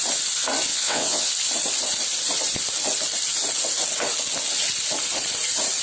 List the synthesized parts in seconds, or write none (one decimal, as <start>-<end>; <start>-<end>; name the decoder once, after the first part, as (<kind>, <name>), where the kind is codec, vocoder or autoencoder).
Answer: 0.7-1.3 (vocoder, WaveNeXt)